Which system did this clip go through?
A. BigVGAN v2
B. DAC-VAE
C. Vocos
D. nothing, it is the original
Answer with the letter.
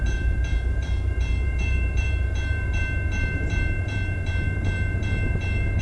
A